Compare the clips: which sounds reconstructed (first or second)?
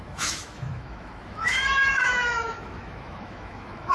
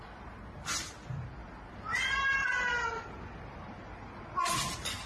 first